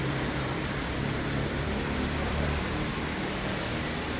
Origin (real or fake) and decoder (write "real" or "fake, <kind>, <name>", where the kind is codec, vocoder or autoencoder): fake, vocoder, BigVGAN v2